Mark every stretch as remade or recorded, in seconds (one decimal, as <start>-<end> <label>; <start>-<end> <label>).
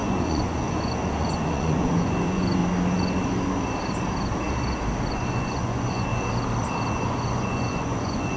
0.0-2.6 remade; 2.6-5.1 recorded; 5.1-6.1 remade; 6.1-6.9 recorded; 6.9-8.4 remade